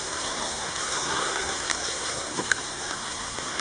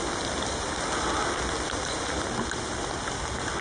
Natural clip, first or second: second